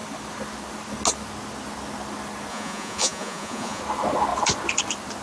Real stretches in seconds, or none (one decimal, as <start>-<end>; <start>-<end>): 0.0-2.5; 3.8-5.2